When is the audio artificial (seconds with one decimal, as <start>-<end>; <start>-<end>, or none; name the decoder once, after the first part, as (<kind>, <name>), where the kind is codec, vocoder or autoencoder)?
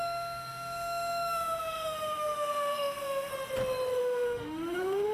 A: 0.0-3.3 (autoencoder, DAC-VAE); 4.0-5.1